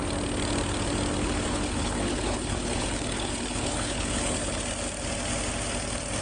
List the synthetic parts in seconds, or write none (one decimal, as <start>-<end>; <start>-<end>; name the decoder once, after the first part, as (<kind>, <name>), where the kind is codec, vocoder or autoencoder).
1.2-4.6 (codec, HILCodec)